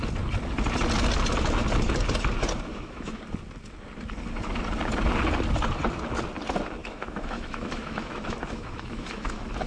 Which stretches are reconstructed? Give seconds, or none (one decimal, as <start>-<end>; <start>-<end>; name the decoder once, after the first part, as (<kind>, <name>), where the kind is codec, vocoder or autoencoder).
2.7-3.2 (autoencoder, DAC-VAE); 6.8-9.7